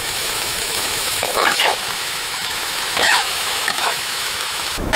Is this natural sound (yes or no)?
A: no